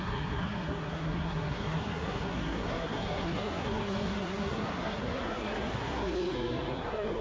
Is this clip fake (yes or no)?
yes